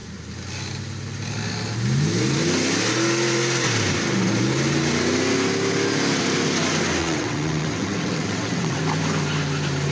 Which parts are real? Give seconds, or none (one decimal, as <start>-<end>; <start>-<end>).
0.0-7.0; 8.8-9.9